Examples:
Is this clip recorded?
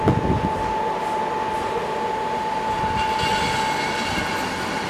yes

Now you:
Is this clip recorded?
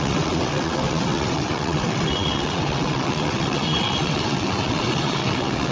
no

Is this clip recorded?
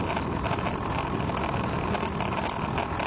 yes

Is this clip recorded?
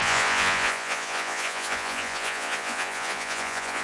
no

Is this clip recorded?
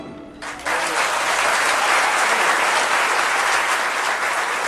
yes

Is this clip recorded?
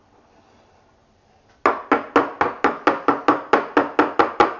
yes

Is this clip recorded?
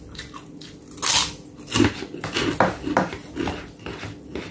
yes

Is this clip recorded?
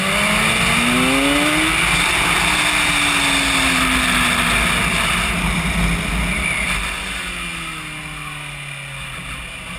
yes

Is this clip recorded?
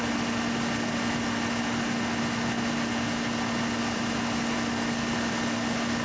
yes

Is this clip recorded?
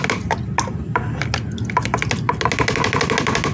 yes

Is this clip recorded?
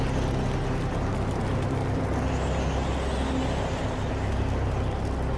yes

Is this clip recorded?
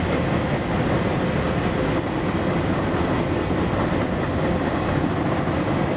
yes